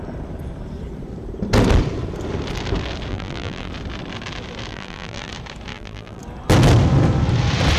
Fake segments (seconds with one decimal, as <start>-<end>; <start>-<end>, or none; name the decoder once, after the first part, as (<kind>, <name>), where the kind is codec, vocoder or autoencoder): 3.1-3.7 (vocoder, BigVGAN v2); 4.7-5.3; 5.7-6.2